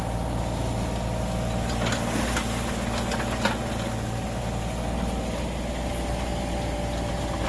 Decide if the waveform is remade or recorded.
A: recorded